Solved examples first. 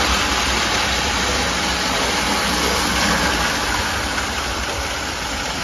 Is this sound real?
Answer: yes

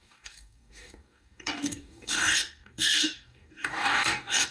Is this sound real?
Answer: no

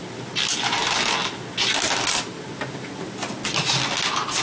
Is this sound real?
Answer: yes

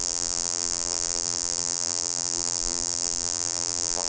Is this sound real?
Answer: no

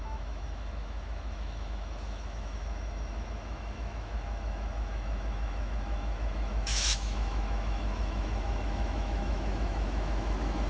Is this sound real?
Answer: no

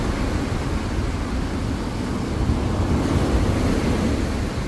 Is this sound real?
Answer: yes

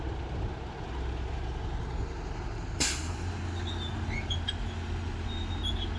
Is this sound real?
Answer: yes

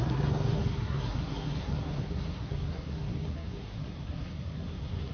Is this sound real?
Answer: no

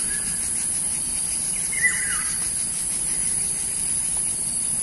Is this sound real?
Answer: no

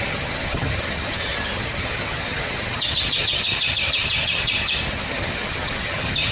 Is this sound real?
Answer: no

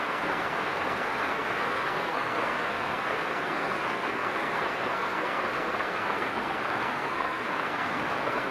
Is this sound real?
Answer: no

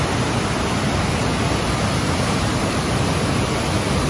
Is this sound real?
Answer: yes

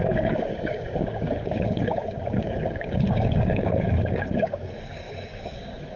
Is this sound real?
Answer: no